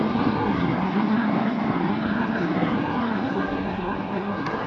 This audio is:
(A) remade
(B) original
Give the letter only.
A